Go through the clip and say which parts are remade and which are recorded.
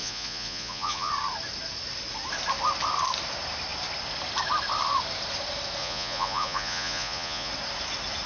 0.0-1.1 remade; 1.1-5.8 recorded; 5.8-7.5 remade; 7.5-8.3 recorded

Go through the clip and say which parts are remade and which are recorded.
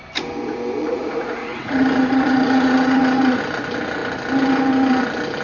0.0-0.8 recorded; 0.8-3.4 remade; 3.4-5.4 recorded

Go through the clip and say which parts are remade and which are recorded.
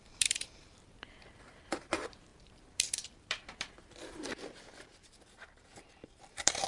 0.0-6.7 remade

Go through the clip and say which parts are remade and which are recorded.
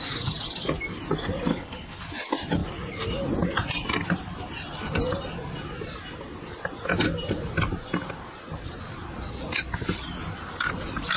0.0-1.5 recorded; 1.5-2.0 remade; 2.0-11.2 recorded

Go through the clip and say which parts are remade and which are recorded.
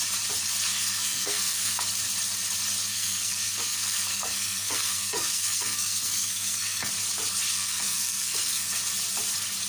0.0-0.7 recorded; 0.7-1.8 remade; 1.8-2.9 recorded; 2.9-6.9 remade; 6.9-7.5 recorded; 7.5-8.8 remade; 8.8-9.7 recorded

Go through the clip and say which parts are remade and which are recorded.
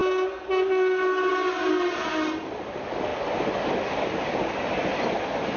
0.0-5.6 recorded